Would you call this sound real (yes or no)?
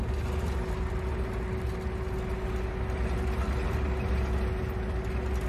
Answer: yes